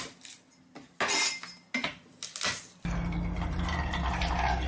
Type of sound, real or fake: real